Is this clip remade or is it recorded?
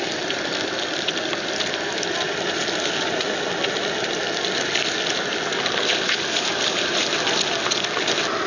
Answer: recorded